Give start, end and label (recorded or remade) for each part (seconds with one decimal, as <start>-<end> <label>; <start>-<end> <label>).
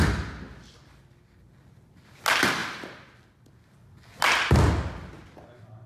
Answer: 0.0-5.9 recorded